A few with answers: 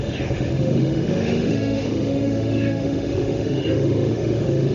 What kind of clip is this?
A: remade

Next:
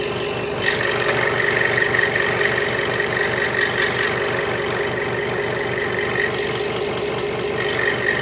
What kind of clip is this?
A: recorded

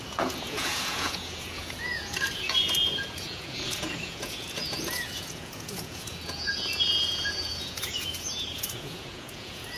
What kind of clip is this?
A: remade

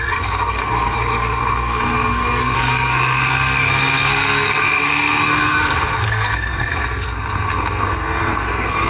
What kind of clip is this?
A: remade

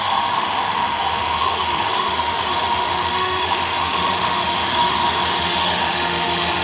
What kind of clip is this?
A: remade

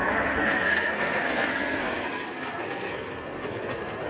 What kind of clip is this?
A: remade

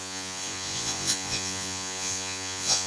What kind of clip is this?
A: remade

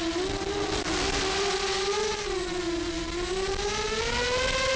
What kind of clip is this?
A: recorded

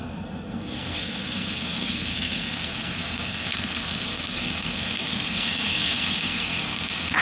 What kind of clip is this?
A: remade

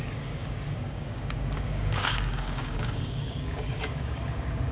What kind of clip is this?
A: remade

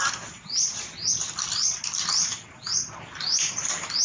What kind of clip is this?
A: recorded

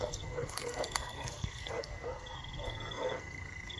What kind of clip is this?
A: remade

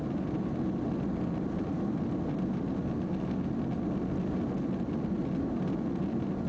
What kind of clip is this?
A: recorded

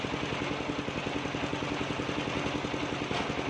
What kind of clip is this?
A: recorded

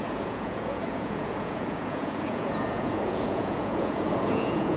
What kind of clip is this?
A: remade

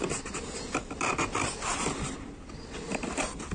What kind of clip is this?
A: recorded